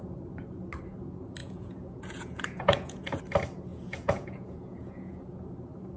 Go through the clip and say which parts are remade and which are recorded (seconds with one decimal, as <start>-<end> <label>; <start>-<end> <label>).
0.0-1.4 recorded; 1.4-3.2 remade; 3.2-3.7 recorded; 3.7-5.5 remade; 5.5-6.0 recorded